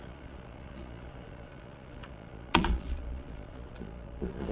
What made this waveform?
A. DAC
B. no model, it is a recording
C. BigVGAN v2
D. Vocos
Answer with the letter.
D